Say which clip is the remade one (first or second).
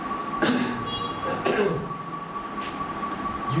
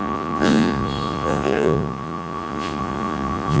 second